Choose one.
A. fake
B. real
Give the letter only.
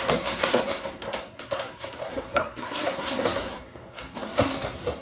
A